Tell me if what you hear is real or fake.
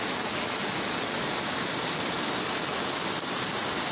real